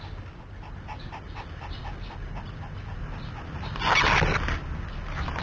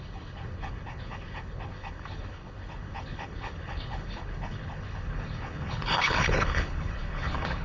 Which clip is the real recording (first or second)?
first